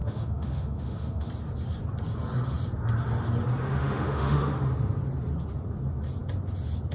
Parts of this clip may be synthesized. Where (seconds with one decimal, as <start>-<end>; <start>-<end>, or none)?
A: 0.0-1.3; 3.6-4.4